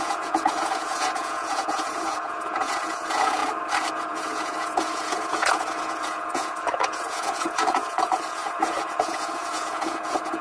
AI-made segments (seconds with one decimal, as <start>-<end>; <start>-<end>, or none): 0.0-3.4; 3.9-10.4